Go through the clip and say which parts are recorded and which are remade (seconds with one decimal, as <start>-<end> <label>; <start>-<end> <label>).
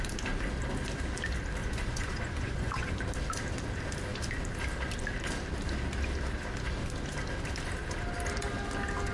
0.0-1.6 recorded; 1.6-2.9 remade; 2.9-9.1 recorded